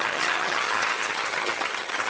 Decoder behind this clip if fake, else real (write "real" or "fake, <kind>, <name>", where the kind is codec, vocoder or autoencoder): fake, vocoder, HiFi-GAN